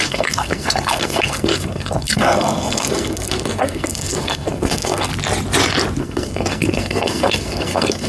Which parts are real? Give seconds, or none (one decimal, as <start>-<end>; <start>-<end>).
5.1-6.0